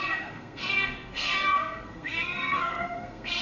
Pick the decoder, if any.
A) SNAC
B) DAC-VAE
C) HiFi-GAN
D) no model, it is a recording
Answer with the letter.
A